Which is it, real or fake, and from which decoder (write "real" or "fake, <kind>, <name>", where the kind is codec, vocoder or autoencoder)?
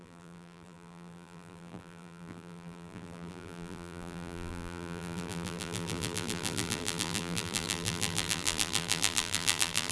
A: fake, vocoder, BigVGAN v2